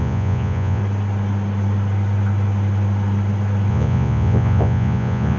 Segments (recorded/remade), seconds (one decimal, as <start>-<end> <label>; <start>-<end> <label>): 0.0-0.8 remade; 0.8-3.7 recorded; 3.7-5.4 remade